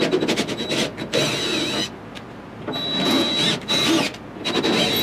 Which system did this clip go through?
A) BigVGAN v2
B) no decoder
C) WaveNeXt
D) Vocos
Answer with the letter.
B